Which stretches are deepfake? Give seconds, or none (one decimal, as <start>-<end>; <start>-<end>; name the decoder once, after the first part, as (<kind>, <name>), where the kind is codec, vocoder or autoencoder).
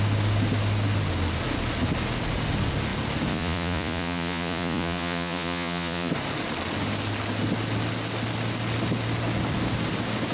3.3-6.1 (vocoder, Vocos)